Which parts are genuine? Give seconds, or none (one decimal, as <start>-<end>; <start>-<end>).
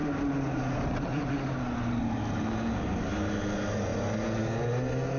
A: 0.0-5.2